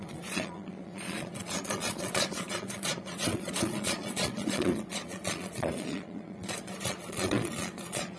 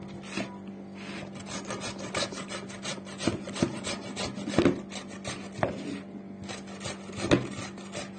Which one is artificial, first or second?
first